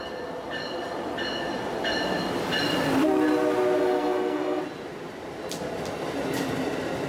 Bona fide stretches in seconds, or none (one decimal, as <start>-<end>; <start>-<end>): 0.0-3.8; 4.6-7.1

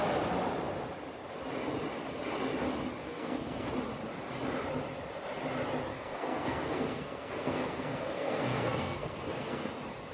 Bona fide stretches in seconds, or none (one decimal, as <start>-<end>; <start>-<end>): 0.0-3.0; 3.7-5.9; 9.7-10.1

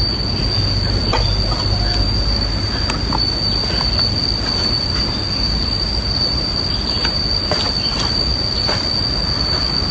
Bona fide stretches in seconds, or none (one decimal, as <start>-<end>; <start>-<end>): 0.0-9.9

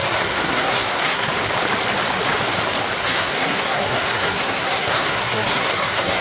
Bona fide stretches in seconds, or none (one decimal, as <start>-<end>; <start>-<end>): 1.3-3.0

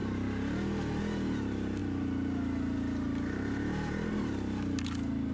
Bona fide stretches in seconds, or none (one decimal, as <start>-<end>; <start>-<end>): 0.0-5.3

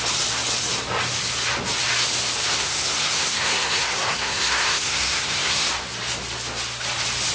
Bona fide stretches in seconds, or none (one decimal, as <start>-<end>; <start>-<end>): 0.0-2.5; 5.7-7.3